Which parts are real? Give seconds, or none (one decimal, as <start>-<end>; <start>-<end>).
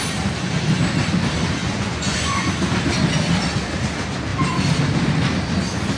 0.0-1.6; 2.5-6.0